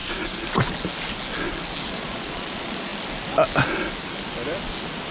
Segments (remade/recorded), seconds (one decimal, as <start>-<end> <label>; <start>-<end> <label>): 0.0-1.8 recorded; 1.8-2.9 remade; 2.9-5.1 recorded